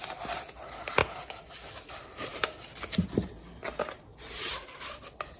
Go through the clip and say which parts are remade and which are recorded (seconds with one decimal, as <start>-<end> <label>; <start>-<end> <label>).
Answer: 0.0-4.1 recorded; 4.1-5.0 remade; 5.0-5.4 recorded